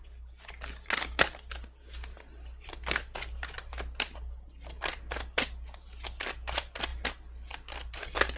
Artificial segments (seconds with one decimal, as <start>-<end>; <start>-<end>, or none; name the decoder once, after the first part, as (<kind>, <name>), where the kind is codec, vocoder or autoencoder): none